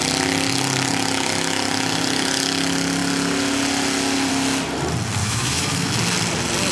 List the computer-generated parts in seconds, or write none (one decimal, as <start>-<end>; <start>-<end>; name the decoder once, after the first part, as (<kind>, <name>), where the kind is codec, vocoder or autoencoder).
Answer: 5.2-5.9 (autoencoder, DAC-VAE)